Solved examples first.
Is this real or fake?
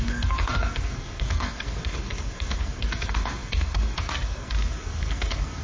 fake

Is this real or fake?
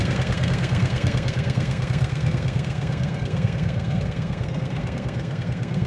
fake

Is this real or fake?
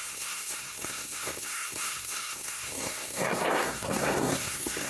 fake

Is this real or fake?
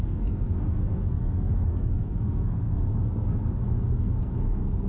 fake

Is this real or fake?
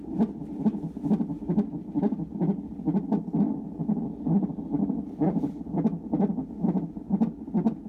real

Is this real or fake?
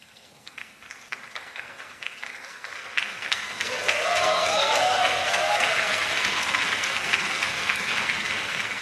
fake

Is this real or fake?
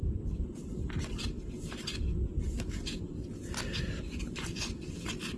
real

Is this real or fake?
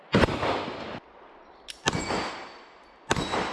real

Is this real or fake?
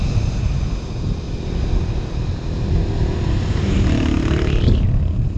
real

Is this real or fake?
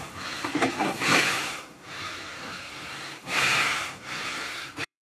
fake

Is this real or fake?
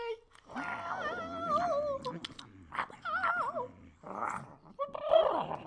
real